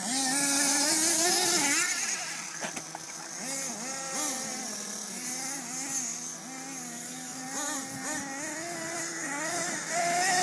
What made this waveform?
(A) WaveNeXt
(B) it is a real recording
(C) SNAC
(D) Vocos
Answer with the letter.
B